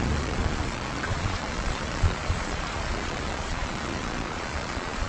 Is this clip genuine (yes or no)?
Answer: no